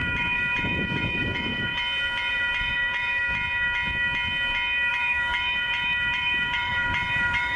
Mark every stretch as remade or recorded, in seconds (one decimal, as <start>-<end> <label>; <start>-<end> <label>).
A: 0.0-1.7 remade; 1.7-2.3 recorded; 2.3-3.2 remade; 3.2-4.9 recorded; 4.9-7.6 remade